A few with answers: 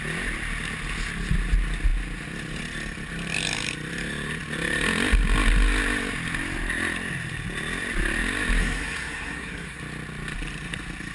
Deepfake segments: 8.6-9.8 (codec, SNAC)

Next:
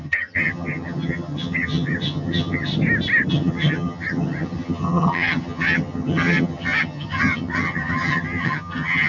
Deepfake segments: 0.0-2.7 (vocoder, HiFi-GAN); 3.3-9.1

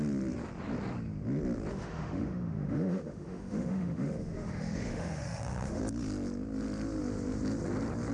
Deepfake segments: 1.7-5.8 (autoencoder, DAC-VAE)

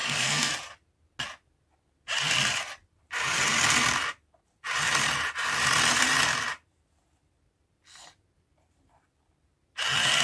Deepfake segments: 0.0-0.5 (codec, SNAC)

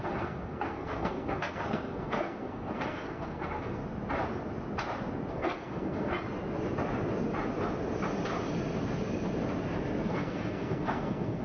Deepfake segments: 0.0-3.8 (codec, SNAC); 5.3-6.1; 10.1-11.4

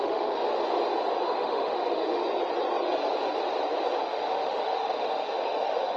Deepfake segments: 0.0-0.4 (autoencoder, DAC-VAE); 1.2-2.2; 4.0-6.0

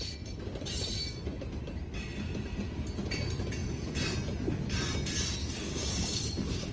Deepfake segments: 5.4-6.7 (codec, DAC)

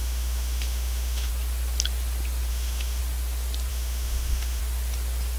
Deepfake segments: 0.0-1.3 (autoencoder, DAC-VAE); 2.5-3.0; 3.7-4.6